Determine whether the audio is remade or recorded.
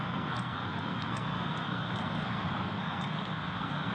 remade